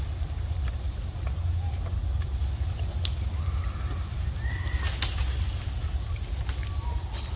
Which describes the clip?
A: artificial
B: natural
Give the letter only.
B